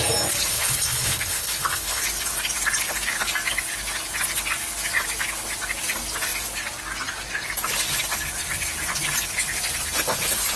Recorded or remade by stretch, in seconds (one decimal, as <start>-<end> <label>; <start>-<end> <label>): 0.0-0.5 recorded; 0.5-2.0 remade; 2.0-10.6 recorded

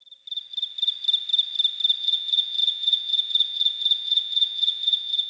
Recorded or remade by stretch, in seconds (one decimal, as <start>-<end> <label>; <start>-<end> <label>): 0.0-2.0 recorded; 2.0-5.3 remade